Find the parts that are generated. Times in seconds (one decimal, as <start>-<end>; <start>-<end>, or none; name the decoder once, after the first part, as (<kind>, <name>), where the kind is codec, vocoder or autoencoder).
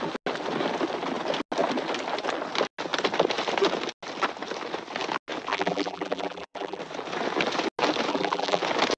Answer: 5.5-6.8 (vocoder, BigVGAN v2); 8.1-8.6